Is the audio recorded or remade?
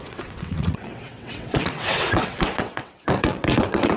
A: remade